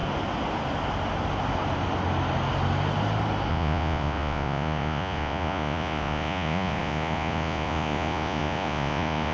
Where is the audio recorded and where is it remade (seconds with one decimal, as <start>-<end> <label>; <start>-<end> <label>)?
0.0-3.5 recorded; 3.5-9.3 remade